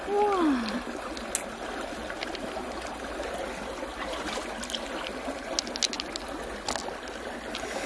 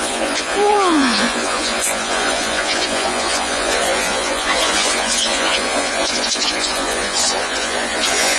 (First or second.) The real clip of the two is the first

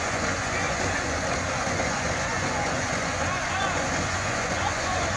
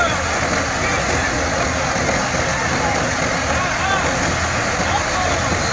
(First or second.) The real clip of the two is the second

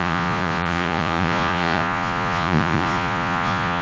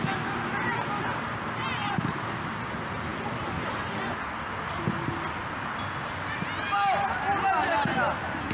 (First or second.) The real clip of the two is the second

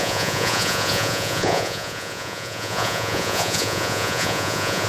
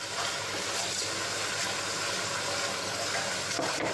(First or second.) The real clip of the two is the second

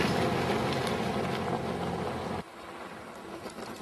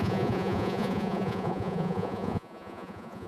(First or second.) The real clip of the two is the first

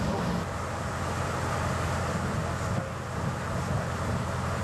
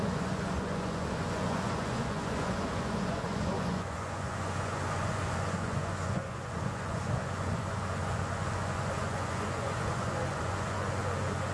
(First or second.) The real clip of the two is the first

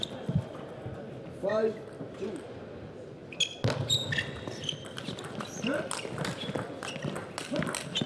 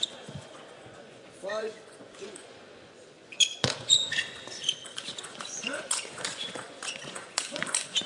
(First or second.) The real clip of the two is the first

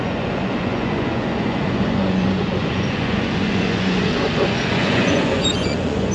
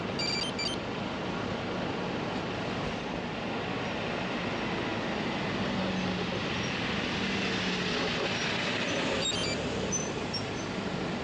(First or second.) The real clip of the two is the second